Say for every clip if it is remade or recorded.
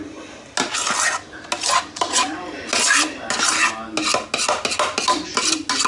recorded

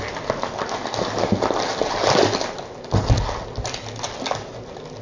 recorded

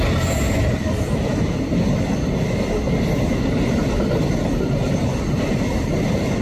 recorded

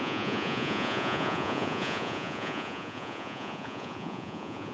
remade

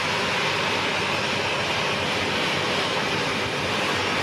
recorded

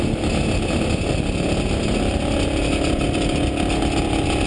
recorded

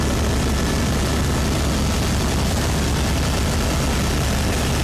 recorded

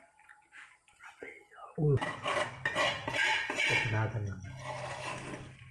recorded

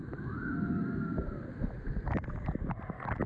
recorded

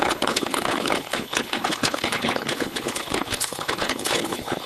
remade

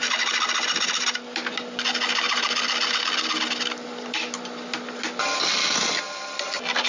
recorded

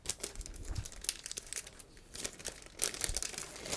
recorded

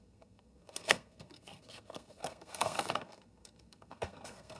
remade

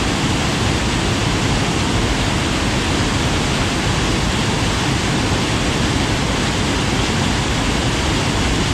recorded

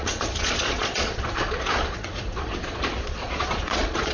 remade